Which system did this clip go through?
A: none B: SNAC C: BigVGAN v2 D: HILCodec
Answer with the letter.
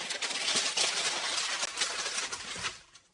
A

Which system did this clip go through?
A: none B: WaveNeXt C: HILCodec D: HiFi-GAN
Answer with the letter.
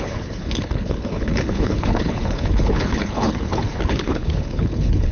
C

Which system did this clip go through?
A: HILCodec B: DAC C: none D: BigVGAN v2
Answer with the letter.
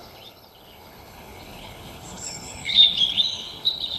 A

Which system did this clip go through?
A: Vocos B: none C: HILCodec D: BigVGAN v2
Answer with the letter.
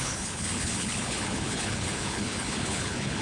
C